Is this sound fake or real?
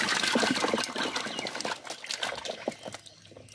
real